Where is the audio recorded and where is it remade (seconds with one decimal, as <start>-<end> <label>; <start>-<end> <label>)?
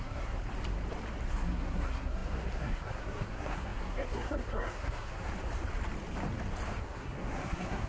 0.0-0.4 remade; 0.4-1.3 recorded; 1.3-5.3 remade; 5.3-6.8 recorded; 6.8-7.9 remade